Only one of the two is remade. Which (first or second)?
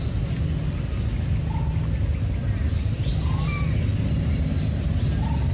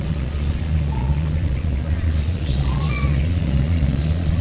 second